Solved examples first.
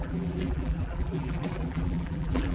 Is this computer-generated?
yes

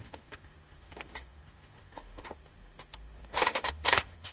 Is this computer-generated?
yes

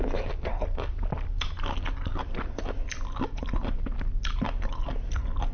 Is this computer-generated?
no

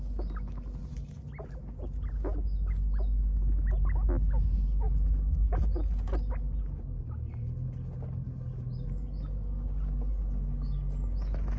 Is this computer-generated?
no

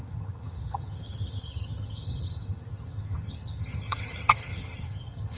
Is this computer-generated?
yes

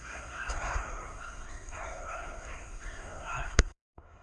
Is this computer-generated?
yes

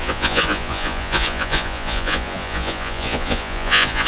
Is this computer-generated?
yes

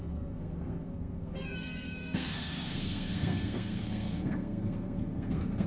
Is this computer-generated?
yes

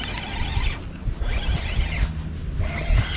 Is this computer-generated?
no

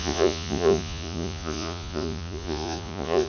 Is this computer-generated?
yes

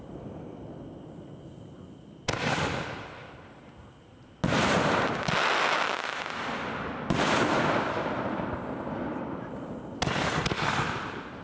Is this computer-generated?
no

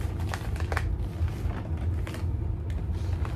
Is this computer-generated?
no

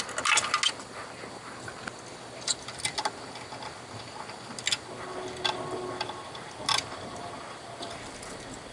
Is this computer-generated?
no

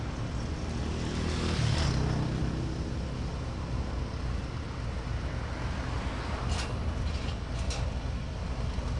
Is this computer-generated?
no